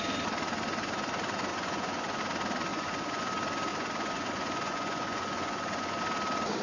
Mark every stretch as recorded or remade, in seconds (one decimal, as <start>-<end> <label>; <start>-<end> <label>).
0.0-1.5 recorded; 1.5-2.2 remade; 2.2-2.7 recorded; 2.7-3.2 remade; 3.2-3.7 recorded; 3.7-6.0 remade; 6.0-6.6 recorded